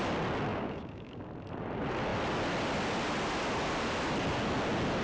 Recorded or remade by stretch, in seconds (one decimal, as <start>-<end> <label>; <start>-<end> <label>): 0.0-0.5 recorded; 0.5-1.3 remade; 1.3-5.0 recorded